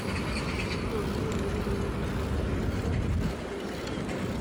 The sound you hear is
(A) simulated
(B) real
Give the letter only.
B